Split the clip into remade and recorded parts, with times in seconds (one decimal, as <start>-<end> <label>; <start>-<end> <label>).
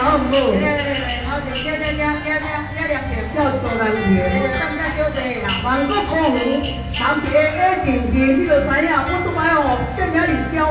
0.0-0.4 recorded; 0.4-1.0 remade; 1.0-10.7 recorded